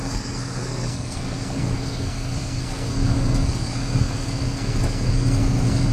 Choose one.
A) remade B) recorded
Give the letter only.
A